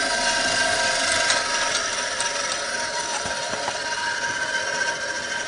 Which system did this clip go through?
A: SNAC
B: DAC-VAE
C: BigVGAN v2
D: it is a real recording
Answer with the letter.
D